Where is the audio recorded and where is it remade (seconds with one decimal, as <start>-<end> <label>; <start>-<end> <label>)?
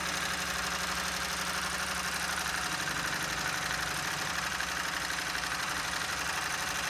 0.0-4.1 recorded; 4.1-6.9 remade